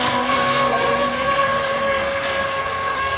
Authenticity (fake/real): fake